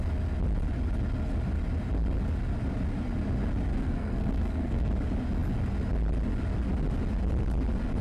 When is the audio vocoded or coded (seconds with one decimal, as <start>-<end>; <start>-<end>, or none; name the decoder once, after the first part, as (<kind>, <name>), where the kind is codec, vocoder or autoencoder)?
3.7-4.9 (codec, SNAC)